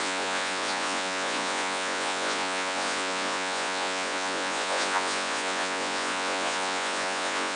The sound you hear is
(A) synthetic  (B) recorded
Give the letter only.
A